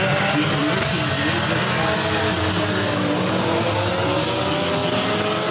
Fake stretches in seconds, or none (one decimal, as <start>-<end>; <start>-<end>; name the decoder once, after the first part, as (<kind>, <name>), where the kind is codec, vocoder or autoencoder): none